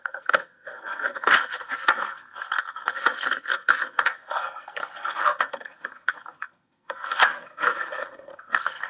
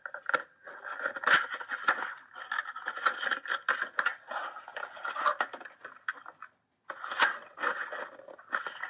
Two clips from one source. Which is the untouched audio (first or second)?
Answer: second